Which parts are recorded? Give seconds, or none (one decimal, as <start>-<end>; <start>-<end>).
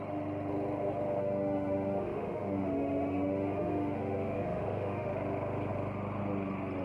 0.0-1.2; 5.1-6.8